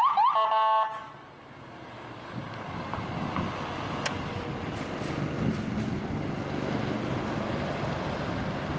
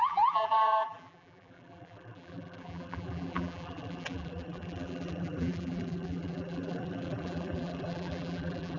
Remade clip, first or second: second